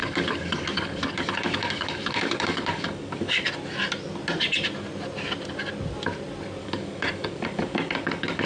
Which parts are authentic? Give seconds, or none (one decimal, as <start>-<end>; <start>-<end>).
3.5-6.6